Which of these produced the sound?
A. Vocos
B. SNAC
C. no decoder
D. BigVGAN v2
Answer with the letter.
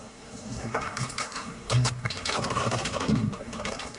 B